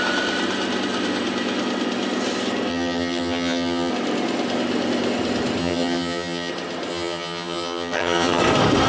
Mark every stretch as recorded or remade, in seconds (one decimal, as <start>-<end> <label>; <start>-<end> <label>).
0.0-2.7 recorded; 2.7-3.9 remade; 3.9-5.6 recorded; 5.6-6.5 remade; 6.5-6.9 recorded; 6.9-8.4 remade; 8.4-8.9 recorded